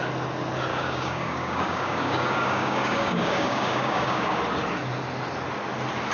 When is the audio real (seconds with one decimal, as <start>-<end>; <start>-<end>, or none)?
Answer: 0.0-0.7; 4.4-6.1